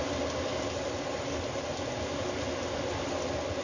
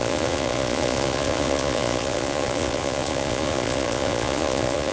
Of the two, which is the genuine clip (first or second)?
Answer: first